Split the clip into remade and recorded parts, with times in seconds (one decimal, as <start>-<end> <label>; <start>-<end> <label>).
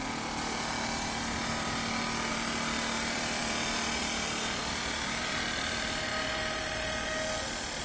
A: 0.0-2.3 recorded; 2.3-4.6 remade; 4.6-5.2 recorded; 5.2-6.1 remade; 6.1-7.8 recorded